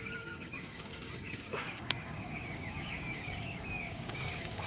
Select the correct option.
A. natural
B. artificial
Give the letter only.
B